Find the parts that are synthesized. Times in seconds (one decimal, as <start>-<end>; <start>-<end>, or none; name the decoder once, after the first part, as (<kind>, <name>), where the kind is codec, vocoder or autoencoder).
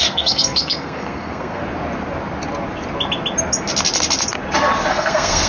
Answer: 0.0-1.6 (codec, SNAC); 4.9-5.5